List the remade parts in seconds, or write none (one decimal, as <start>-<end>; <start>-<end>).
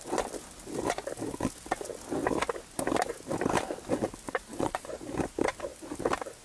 4.5-5.0